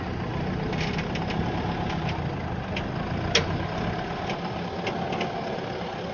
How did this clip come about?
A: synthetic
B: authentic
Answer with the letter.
B